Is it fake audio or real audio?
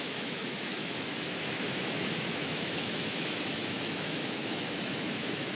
fake